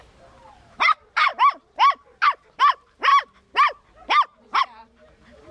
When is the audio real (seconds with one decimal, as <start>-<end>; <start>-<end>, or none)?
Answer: 1.3-2.6; 3.1-4.6